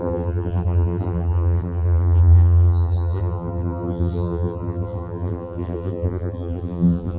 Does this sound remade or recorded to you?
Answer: remade